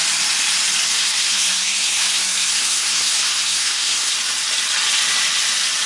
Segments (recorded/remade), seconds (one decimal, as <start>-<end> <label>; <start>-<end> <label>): 0.0-0.9 recorded; 0.9-4.1 remade; 4.1-5.9 recorded